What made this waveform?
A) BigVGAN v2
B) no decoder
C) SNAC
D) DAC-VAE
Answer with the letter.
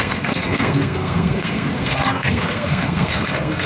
C